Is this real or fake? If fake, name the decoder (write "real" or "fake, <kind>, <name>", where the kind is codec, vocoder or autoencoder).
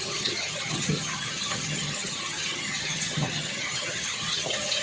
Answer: fake, vocoder, HiFi-GAN